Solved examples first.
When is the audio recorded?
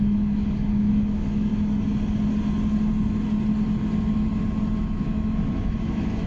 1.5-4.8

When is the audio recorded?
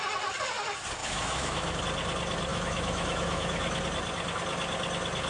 0.0-1.0; 1.8-2.5; 3.8-5.3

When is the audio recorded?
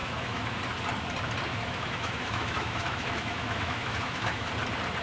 0.6-1.5; 4.5-5.0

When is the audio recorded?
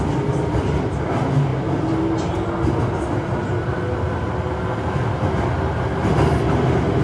0.0-7.0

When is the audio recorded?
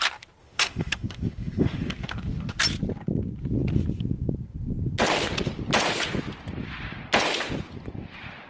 0.0-0.4; 2.6-8.5